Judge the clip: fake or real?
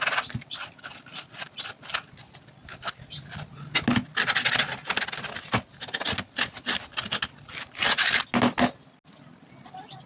real